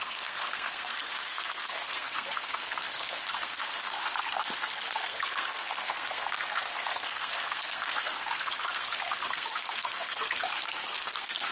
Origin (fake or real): fake